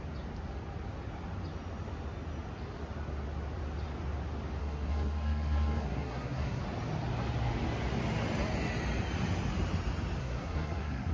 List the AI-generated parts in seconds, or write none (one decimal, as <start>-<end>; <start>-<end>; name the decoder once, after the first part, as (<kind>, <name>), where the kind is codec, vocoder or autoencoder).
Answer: 4.6-6.6 (codec, SNAC); 10.2-11.1